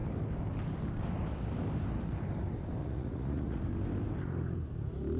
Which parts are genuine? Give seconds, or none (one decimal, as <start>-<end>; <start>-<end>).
0.0-2.8; 3.6-5.2